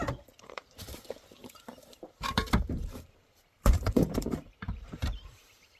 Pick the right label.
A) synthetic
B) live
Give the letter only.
A